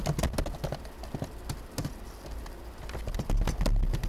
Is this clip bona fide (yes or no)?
yes